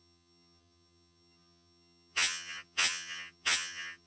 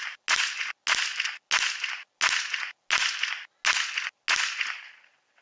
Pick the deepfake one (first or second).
first